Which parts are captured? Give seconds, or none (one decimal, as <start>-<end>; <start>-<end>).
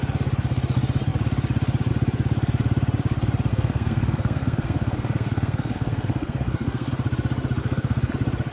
0.0-3.5; 6.9-7.6; 8.1-8.5